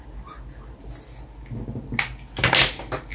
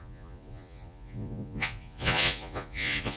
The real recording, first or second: first